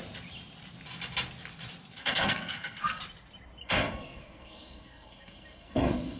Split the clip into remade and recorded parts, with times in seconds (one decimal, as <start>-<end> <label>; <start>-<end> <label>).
0.0-2.0 recorded; 2.0-3.0 remade; 3.0-3.6 recorded; 3.6-6.2 remade